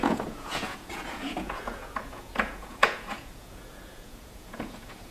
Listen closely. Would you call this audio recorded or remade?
remade